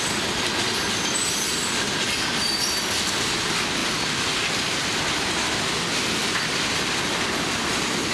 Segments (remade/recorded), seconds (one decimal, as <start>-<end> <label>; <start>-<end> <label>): 0.0-8.1 recorded